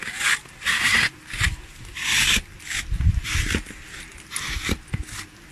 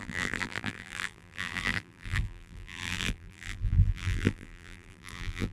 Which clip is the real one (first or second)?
first